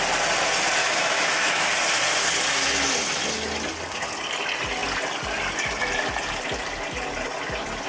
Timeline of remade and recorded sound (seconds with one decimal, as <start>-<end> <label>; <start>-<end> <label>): 0.0-0.8 recorded; 0.8-1.7 remade; 1.7-7.9 recorded